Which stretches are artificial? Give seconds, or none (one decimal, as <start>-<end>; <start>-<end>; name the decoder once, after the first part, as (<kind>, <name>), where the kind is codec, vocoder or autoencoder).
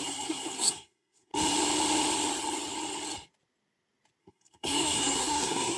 0.0-1.3 (codec, SNAC); 4.2-5.8